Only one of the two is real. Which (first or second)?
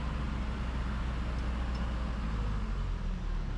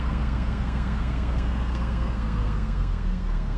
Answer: first